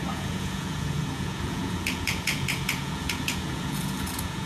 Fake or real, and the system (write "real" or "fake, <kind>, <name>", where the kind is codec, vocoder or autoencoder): fake, vocoder, Vocos